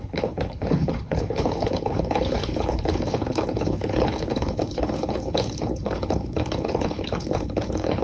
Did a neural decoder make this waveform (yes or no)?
yes